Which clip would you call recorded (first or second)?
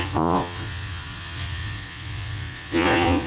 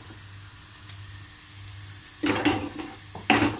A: second